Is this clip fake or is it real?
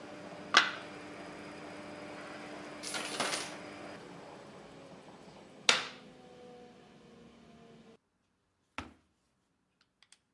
real